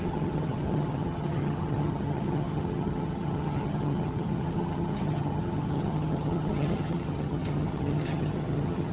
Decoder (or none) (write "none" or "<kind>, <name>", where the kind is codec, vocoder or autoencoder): vocoder, HiFi-GAN